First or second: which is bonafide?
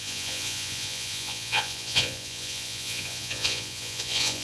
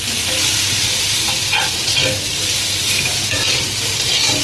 second